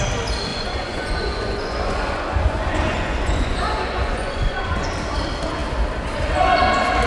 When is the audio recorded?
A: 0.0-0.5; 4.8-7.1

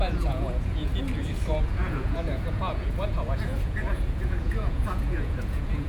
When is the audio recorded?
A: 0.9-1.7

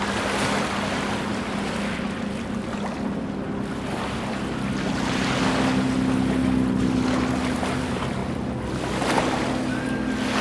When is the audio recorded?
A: 0.0-10.4